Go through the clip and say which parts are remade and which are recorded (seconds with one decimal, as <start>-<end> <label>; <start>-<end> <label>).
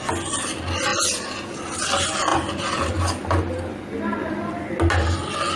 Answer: 0.0-5.6 recorded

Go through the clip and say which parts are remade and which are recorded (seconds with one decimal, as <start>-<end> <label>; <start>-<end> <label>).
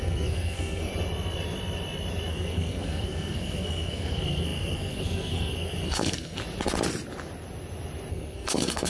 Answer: 0.0-0.9 remade; 0.9-2.3 recorded; 2.3-6.4 remade; 6.4-8.1 recorded; 8.1-8.9 remade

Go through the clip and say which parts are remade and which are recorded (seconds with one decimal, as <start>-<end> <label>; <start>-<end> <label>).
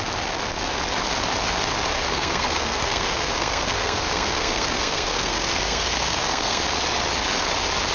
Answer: 0.0-1.9 recorded; 1.9-6.6 remade; 6.6-7.9 recorded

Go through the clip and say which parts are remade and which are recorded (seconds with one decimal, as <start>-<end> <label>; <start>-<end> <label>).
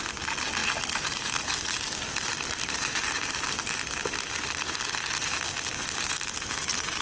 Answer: 0.0-7.0 recorded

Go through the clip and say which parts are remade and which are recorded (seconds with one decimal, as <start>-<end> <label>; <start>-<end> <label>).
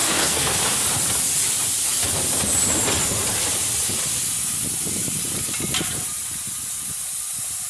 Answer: 0.0-0.6 remade; 0.6-7.7 recorded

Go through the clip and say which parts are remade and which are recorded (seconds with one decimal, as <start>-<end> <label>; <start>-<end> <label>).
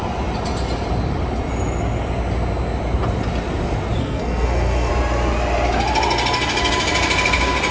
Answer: 0.0-4.0 recorded; 4.0-4.9 remade; 4.9-7.7 recorded